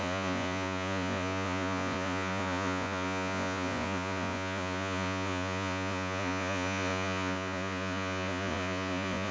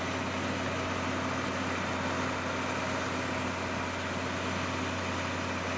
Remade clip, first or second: first